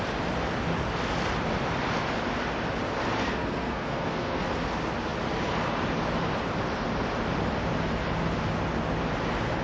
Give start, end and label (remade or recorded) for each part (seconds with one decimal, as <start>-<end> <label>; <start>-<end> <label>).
0.0-3.2 recorded; 3.2-4.4 remade; 4.4-9.6 recorded